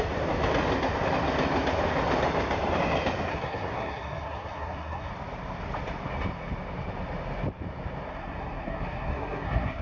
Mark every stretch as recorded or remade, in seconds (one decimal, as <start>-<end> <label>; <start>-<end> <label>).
0.0-3.3 recorded; 3.3-5.1 remade; 5.1-8.1 recorded; 8.1-9.8 remade